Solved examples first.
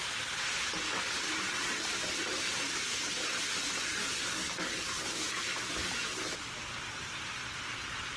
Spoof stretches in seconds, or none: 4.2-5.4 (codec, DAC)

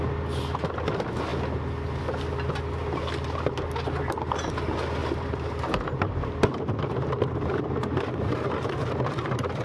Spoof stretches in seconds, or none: 5.0-8.7 (vocoder, BigVGAN v2)

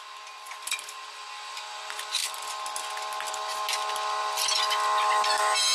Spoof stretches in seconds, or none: none

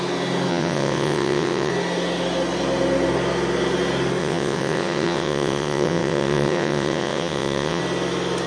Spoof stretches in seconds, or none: 0.5-1.7 (vocoder, WaveNeXt); 4.2-7.8

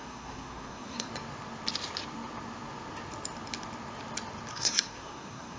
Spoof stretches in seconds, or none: 0.0-1.1 (codec, SNAC); 4.5-5.6

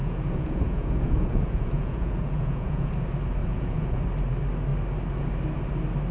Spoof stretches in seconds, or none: 0.0-2.9 (vocoder, Vocos); 3.4-4.0

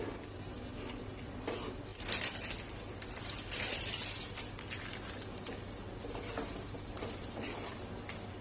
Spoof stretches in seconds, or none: none